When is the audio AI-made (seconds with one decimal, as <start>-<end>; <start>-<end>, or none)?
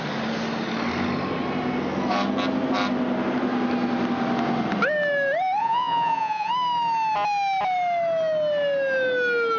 5.6-6.5